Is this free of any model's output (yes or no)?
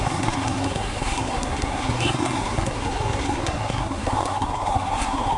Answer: no